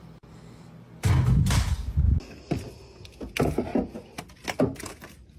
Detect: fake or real real